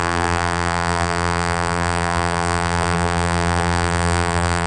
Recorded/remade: remade